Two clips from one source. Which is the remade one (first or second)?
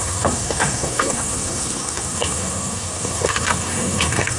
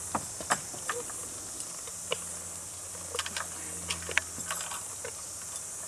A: first